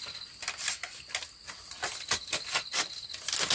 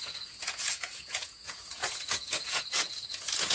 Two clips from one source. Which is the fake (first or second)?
second